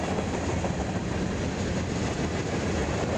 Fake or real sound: real